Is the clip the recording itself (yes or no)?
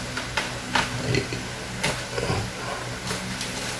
yes